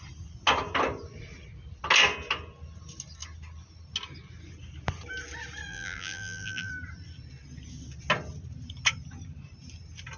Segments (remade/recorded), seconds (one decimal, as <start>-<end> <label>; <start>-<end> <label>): 0.0-5.7 recorded; 5.7-6.7 remade; 6.7-10.2 recorded